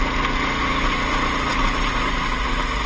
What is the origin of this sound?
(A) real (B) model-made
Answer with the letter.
A